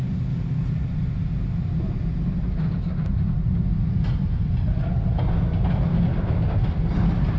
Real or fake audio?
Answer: real